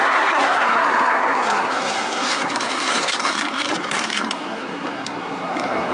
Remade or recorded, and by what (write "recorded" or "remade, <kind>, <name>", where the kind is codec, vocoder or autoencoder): remade, codec, SNAC